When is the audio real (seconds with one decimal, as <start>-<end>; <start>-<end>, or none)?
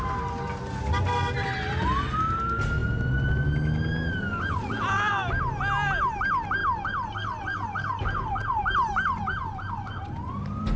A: 0.0-10.8